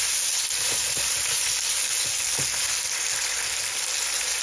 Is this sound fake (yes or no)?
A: no